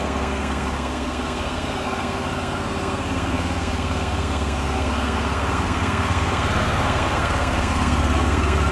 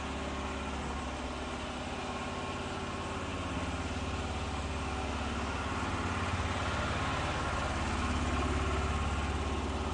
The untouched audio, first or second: second